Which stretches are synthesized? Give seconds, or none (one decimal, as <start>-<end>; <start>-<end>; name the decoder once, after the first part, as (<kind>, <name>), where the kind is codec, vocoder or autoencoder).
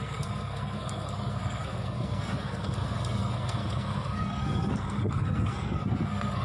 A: 0.0-6.4 (codec, SNAC)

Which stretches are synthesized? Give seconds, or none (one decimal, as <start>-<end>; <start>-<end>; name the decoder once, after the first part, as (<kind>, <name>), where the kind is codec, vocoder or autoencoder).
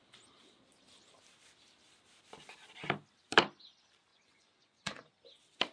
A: 4.1-5.1 (vocoder, Vocos)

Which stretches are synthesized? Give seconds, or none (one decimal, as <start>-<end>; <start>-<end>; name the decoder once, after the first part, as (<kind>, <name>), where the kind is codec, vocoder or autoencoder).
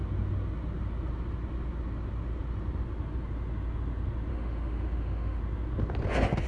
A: 4.3-5.4 (autoencoder, DAC-VAE)